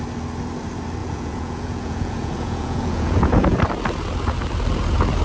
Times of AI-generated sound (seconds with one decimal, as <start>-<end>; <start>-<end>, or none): 1.0-3.6